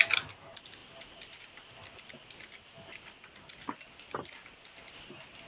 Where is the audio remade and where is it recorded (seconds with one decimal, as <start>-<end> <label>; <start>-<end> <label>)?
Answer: 0.0-5.5 recorded